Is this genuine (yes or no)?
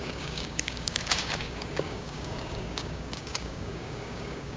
no